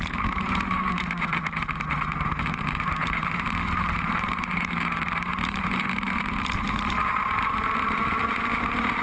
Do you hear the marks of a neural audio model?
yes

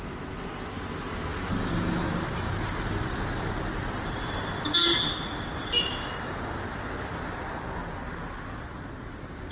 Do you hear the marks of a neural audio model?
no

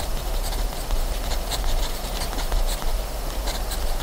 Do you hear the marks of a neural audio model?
yes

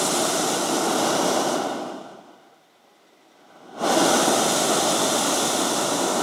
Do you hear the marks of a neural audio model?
no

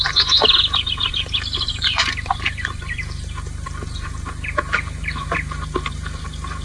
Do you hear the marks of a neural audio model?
yes